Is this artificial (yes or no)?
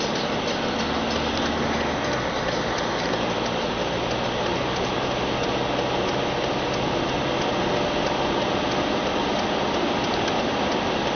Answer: no